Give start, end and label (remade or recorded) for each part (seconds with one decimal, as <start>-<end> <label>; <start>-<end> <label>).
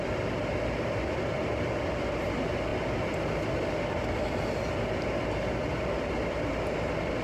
0.0-7.2 recorded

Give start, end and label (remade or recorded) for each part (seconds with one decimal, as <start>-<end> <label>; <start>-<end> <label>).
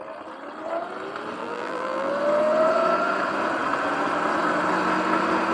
0.0-1.4 recorded; 1.4-2.1 remade; 2.1-5.5 recorded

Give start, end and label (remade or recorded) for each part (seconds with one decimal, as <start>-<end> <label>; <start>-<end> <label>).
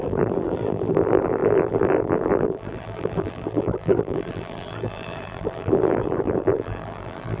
0.0-7.4 remade